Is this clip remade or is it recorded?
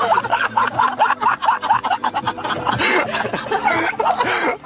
recorded